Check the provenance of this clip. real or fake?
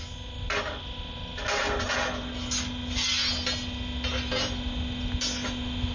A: real